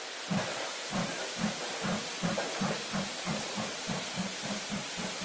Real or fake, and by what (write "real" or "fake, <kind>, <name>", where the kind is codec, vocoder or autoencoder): fake, vocoder, BigVGAN v2